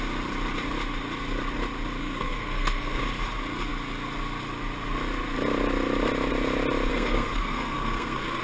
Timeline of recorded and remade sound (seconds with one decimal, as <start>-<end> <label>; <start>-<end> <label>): 0.0-2.0 recorded; 2.0-3.0 remade; 3.0-6.9 recorded; 6.9-8.4 remade